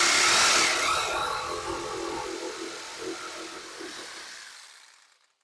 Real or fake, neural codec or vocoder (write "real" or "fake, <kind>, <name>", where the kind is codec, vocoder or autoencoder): real